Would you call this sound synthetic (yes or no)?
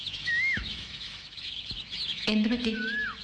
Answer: yes